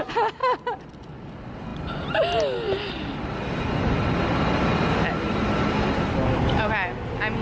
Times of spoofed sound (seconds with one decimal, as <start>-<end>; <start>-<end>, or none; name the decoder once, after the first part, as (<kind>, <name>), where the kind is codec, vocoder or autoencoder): none